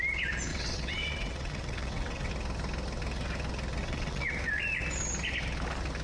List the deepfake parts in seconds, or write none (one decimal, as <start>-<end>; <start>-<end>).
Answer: 0.5-2.3; 3.8-4.3